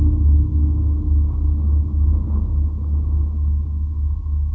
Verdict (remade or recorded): recorded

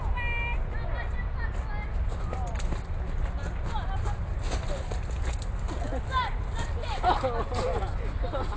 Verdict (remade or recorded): recorded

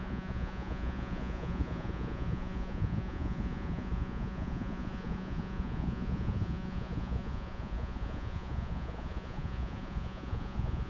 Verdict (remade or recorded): remade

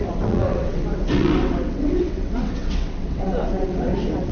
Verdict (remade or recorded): remade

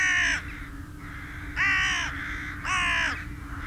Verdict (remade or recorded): recorded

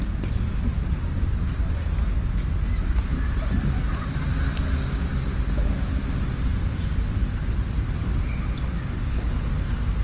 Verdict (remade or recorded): recorded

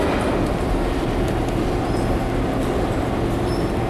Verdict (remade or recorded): recorded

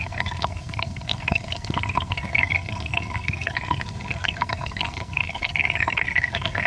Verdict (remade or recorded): remade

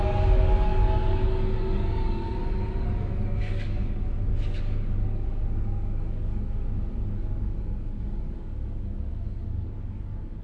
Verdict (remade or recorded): remade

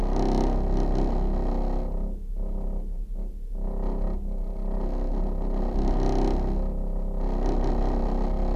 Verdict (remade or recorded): recorded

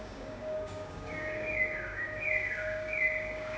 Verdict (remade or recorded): remade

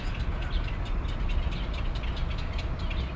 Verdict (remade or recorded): recorded